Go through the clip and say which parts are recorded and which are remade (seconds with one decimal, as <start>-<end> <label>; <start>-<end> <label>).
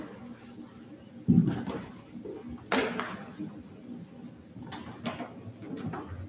0.0-6.3 recorded